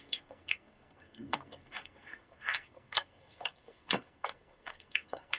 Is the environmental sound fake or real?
fake